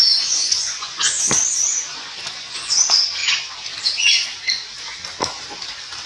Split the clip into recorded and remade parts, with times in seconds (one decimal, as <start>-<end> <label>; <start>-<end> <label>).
0.0-1.0 remade; 1.0-1.9 recorded; 1.9-2.7 remade; 2.7-6.1 recorded